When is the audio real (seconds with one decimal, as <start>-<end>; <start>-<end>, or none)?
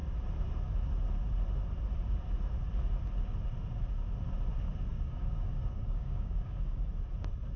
0.0-4.9; 6.9-7.6